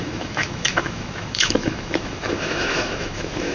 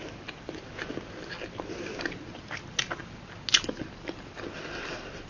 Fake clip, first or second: first